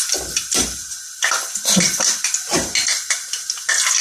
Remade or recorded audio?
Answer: recorded